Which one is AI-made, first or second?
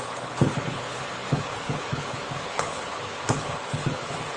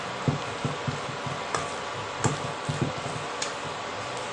first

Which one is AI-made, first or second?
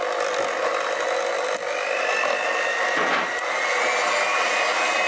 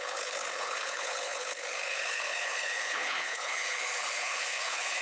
second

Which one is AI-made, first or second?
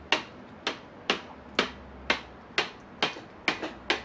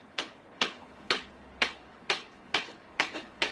second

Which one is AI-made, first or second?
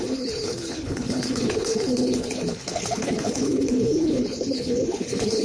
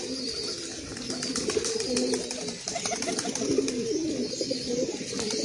first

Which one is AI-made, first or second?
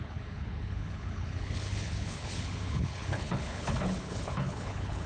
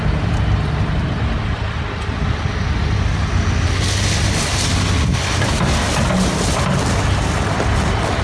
first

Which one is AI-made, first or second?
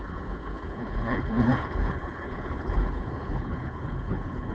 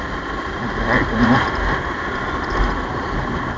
first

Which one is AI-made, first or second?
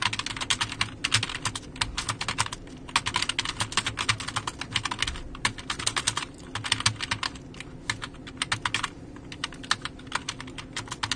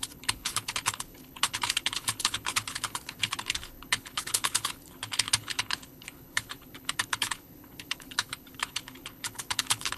second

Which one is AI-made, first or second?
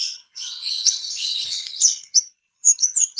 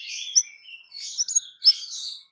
first